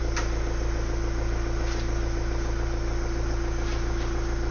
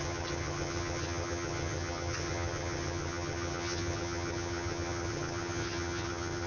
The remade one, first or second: second